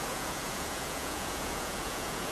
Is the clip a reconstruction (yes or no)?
yes